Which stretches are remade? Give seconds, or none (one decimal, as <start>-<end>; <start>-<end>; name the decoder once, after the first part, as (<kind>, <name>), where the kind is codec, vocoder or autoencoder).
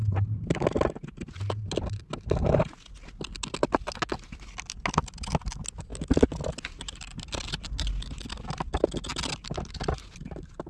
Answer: none